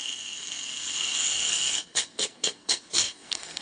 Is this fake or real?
fake